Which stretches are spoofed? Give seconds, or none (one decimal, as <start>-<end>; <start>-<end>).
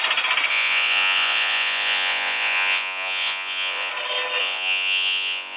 0.5-3.9; 4.4-5.6